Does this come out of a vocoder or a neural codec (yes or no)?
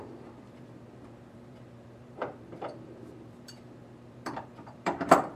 yes